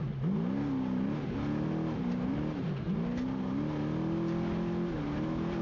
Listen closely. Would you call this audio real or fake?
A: real